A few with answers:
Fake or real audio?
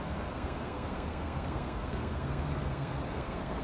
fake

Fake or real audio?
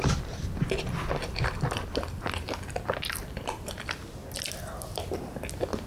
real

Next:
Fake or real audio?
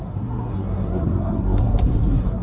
fake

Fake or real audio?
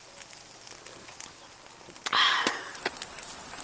real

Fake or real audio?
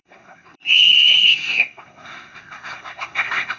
fake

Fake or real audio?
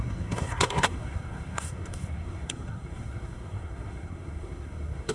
fake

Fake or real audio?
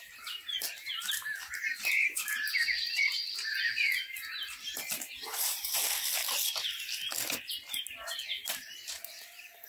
real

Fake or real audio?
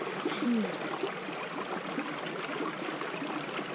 real